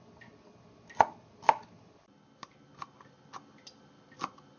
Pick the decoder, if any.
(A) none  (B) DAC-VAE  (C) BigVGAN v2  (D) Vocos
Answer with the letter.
A